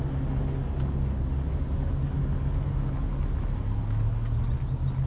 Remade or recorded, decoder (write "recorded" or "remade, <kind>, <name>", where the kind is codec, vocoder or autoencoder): recorded